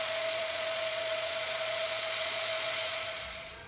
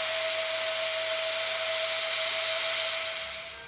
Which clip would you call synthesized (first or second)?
first